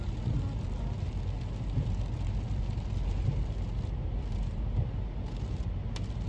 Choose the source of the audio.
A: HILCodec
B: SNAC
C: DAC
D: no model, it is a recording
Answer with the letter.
D